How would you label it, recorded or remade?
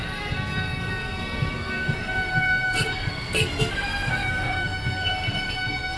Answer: remade